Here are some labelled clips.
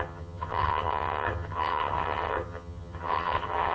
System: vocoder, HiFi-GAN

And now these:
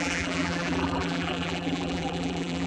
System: vocoder, BigVGAN v2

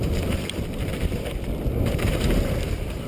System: vocoder, BigVGAN v2